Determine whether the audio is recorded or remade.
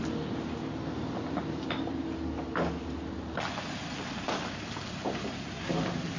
recorded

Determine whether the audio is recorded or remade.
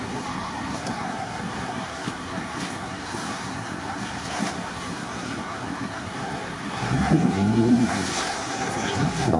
remade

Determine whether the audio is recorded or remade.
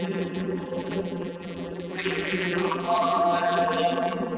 remade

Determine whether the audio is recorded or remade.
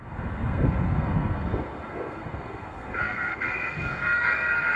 remade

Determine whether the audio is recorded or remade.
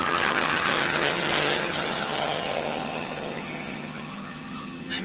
remade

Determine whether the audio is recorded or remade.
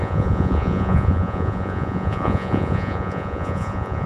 remade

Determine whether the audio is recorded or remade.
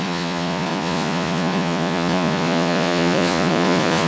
remade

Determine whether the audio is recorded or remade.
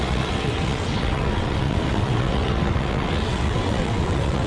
remade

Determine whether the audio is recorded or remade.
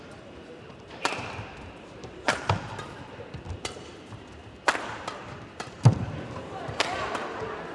remade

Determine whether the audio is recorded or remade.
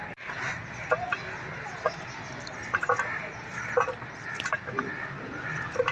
recorded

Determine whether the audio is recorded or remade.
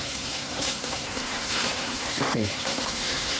remade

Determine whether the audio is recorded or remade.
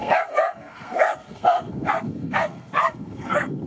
remade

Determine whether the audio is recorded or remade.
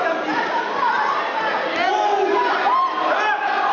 recorded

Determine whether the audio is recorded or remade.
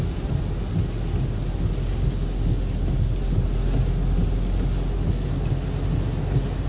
recorded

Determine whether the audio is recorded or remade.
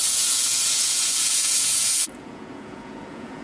remade